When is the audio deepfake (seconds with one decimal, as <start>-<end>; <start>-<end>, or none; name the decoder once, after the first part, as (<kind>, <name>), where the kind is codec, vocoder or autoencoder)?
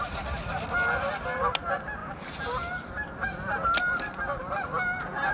none